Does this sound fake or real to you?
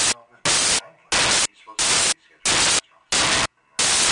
real